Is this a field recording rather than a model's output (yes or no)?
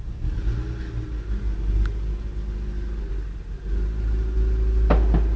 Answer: yes